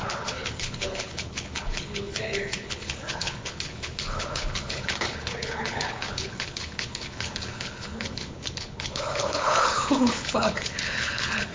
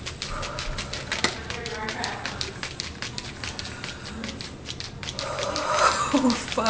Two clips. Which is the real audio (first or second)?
second